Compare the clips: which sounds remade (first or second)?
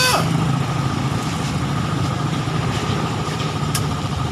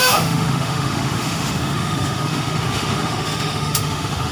second